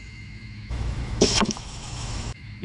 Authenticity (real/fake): fake